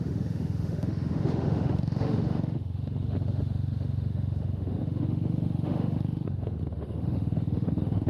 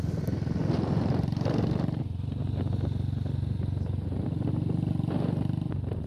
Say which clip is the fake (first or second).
first